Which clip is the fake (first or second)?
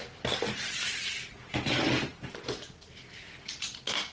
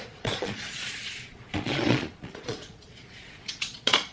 second